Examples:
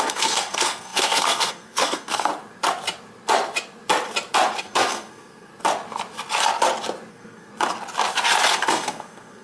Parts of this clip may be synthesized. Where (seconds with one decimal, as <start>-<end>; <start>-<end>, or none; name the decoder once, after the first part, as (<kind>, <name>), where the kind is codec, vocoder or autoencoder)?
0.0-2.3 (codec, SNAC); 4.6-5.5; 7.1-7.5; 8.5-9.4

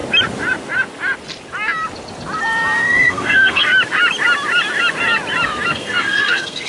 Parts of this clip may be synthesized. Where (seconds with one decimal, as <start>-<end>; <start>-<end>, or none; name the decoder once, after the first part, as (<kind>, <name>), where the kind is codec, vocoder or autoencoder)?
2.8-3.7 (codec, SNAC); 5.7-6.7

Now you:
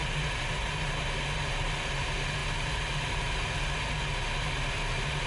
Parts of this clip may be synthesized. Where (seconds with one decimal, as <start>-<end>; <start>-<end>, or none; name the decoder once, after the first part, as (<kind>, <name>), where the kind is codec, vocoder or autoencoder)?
none